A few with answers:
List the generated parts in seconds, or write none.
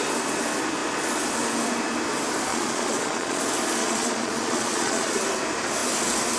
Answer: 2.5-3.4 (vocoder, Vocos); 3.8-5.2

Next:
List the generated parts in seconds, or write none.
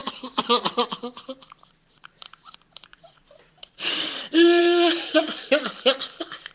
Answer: 0.0-0.8 (vocoder, Vocos); 2.9-4.1; 4.6-5.2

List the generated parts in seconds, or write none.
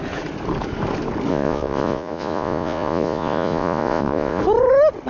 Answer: 1.3-4.4 (vocoder, Vocos)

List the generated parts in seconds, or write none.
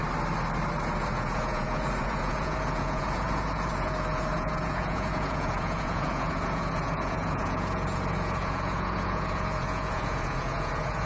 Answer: 0.8-11.1 (vocoder, Vocos)